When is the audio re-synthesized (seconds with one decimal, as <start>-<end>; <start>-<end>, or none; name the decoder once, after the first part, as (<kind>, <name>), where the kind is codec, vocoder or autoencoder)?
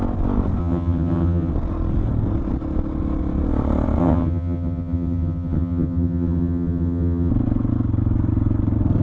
0.6-1.5 (vocoder, HiFi-GAN); 4.0-7.3